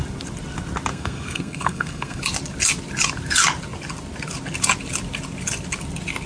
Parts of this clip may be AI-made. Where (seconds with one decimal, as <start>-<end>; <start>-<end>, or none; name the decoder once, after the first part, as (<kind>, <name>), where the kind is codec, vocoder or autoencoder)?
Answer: 0.9-2.2 (codec, SNAC)